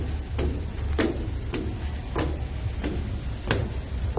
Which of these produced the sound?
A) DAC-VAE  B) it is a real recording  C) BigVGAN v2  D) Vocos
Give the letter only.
B